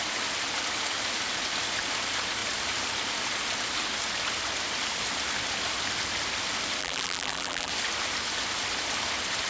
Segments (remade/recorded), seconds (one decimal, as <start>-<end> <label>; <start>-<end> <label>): 0.0-6.8 recorded; 6.8-7.7 remade; 7.7-9.5 recorded